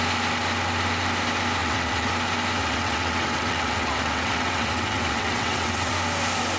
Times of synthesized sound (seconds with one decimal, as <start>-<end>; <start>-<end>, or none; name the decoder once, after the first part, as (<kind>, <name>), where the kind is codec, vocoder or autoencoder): 1.6-2.1 (vocoder, WaveNeXt); 2.6-5.9